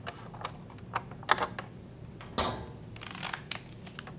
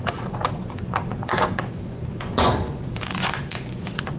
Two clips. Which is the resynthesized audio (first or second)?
second